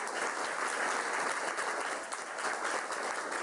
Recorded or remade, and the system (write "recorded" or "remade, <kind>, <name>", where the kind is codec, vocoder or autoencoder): recorded